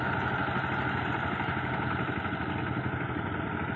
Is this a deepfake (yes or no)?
no